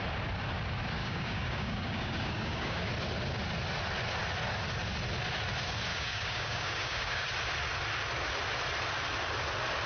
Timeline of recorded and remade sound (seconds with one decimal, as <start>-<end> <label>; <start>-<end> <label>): 0.0-1.0 recorded; 1.0-2.9 remade; 2.9-5.9 recorded; 5.9-7.3 remade; 7.3-9.9 recorded